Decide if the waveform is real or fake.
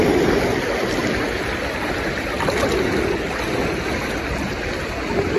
real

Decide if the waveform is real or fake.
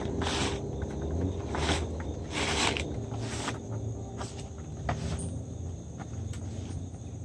real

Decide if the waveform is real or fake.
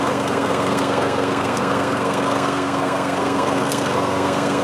fake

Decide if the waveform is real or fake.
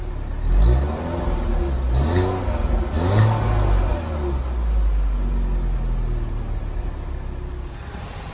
real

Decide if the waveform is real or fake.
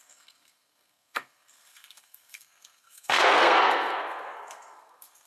fake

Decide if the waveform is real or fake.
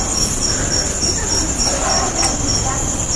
real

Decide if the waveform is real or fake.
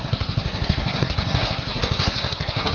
fake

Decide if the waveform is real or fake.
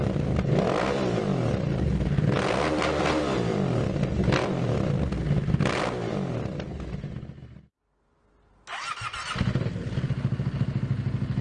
real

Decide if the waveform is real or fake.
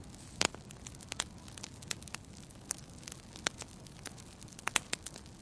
real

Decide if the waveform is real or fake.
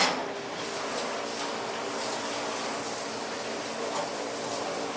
real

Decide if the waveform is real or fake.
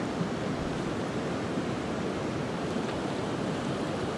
real